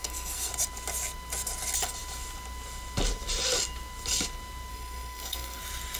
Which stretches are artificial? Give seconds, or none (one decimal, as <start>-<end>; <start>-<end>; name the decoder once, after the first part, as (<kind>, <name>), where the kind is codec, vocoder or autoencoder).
0.0-0.5 (codec, SNAC); 4.7-5.6